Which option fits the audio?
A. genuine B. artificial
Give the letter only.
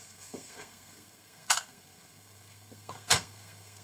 B